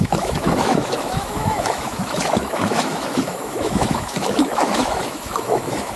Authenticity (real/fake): fake